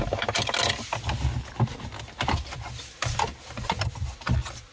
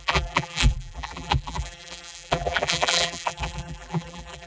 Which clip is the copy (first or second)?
second